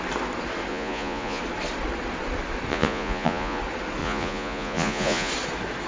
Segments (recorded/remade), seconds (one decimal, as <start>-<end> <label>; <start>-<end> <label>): 0.0-0.7 recorded; 0.7-1.4 remade; 1.4-2.7 recorded; 2.7-3.6 remade; 3.6-4.0 recorded; 4.0-5.3 remade; 5.3-5.9 recorded